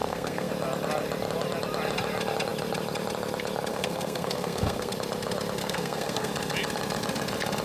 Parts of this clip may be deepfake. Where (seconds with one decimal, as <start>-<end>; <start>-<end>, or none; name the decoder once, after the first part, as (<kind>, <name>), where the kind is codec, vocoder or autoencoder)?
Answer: 0.0-0.5 (codec, SNAC); 3.7-4.9; 5.6-6.3